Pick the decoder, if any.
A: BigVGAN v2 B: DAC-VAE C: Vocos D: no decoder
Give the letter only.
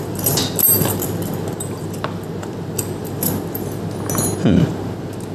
D